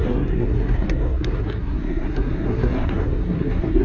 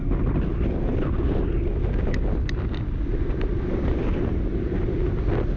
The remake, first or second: first